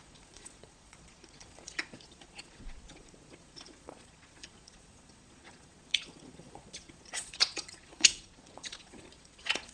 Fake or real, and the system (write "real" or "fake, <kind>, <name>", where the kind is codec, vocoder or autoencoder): fake, vocoder, Vocos